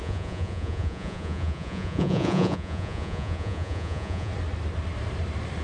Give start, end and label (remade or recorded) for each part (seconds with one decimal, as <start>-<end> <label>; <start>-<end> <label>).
0.0-4.3 remade; 4.3-5.6 recorded